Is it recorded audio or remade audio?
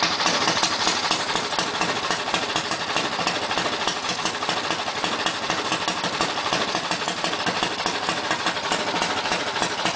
recorded